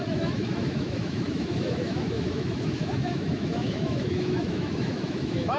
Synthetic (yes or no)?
yes